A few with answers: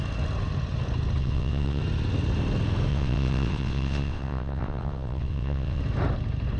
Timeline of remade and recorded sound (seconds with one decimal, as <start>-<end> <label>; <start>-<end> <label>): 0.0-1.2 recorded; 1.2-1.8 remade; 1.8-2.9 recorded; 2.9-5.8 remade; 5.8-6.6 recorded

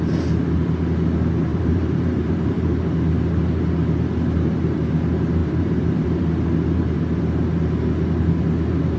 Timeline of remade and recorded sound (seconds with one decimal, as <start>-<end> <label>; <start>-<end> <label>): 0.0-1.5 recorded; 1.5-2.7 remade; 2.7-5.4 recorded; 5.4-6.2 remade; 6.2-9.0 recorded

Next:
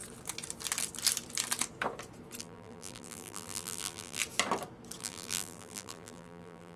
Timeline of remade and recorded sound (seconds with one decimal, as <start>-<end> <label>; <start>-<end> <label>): 0.0-2.4 recorded; 2.4-4.2 remade; 4.2-5.0 recorded; 5.0-6.8 remade

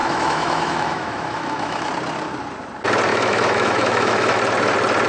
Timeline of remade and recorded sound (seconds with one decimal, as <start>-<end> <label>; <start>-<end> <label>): 0.0-1.9 remade; 1.9-3.1 recorded; 3.1-4.4 remade; 4.4-5.1 recorded

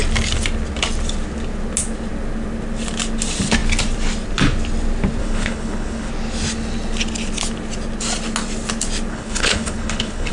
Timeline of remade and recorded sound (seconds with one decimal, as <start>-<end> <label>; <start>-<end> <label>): 0.0-5.2 recorded; 5.2-6.1 remade; 6.1-9.1 recorded; 9.1-10.3 remade

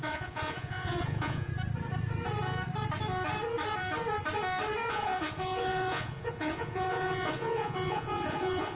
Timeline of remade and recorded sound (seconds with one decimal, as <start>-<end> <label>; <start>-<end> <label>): 0.0-1.5 remade; 1.5-4.9 recorded; 4.9-8.8 remade